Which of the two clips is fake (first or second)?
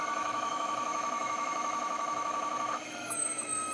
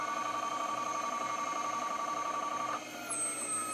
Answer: first